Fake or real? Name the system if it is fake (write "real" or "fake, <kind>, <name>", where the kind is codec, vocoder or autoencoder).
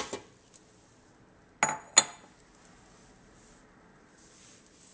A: real